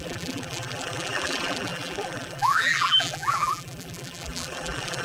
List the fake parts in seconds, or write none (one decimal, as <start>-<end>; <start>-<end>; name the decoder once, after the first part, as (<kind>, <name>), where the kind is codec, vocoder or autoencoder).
0.0-5.0 (vocoder, BigVGAN v2)